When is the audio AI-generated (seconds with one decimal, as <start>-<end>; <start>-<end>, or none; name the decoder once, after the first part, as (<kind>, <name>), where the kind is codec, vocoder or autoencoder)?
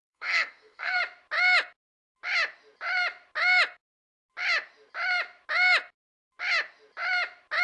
0.0-1.0 (codec, SNAC)